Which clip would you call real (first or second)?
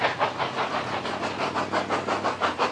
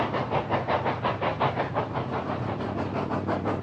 first